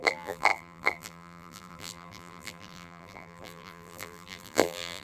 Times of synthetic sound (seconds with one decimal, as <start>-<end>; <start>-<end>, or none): 0.0-5.0